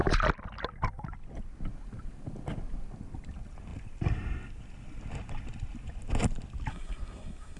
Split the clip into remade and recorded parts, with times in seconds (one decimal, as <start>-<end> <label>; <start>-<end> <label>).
0.0-6.7 recorded; 6.7-7.6 remade